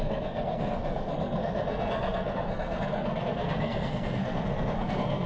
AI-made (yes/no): yes